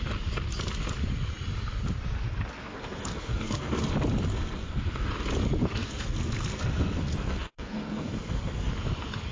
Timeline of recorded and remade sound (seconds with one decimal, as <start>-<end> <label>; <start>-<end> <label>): 0.0-2.6 recorded; 2.6-3.9 remade; 3.9-4.3 recorded; 4.3-5.1 remade; 5.1-5.6 recorded; 5.6-8.7 remade; 8.7-9.3 recorded